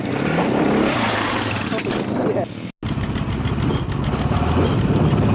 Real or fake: real